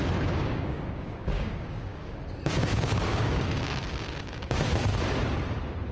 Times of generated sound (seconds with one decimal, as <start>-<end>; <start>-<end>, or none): 0.0-2.0; 2.6-4.9

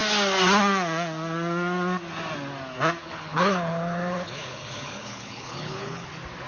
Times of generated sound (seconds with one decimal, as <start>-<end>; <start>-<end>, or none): 3.0-6.1

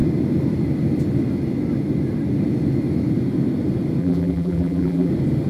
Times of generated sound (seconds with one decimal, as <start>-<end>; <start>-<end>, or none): 4.0-5.1

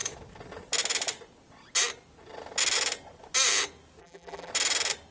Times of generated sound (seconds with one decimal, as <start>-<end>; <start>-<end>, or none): 4.0-4.5

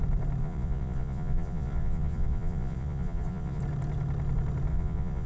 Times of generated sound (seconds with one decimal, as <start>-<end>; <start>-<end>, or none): 0.4-3.6; 4.7-5.3